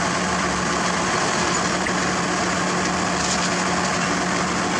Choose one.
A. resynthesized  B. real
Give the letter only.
B